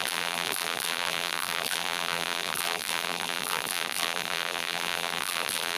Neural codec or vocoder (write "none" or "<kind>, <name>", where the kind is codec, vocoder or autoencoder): vocoder, BigVGAN v2